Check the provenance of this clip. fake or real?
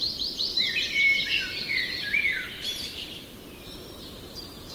fake